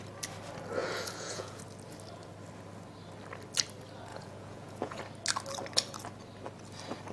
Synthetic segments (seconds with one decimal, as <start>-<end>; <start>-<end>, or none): 0.8-1.6; 4.1-5.0